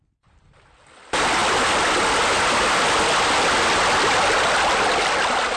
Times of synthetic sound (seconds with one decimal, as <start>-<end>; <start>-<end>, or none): none